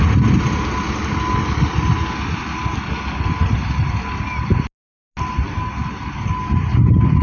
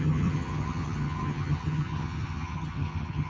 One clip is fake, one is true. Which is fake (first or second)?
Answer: second